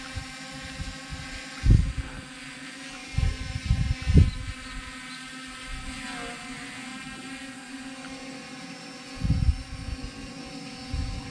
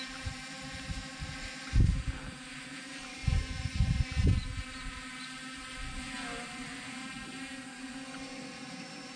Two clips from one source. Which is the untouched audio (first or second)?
first